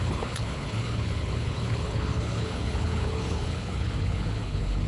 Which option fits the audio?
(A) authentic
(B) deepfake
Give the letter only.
B